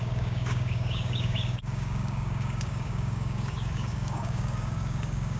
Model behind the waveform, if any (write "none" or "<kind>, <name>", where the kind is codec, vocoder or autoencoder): codec, DAC